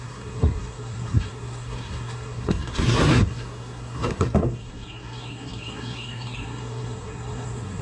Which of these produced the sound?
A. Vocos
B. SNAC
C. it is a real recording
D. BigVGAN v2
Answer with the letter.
B